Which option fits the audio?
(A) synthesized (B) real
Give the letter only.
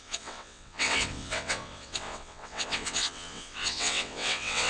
A